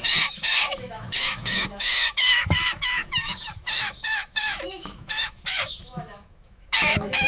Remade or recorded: remade